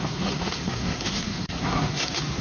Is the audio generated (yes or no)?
yes